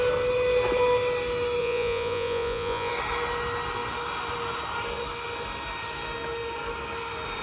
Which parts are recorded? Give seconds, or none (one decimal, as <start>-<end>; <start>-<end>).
0.0-1.6; 2.9-7.4